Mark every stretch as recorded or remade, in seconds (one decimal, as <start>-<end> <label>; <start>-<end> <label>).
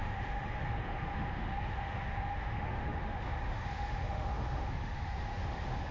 0.0-5.9 remade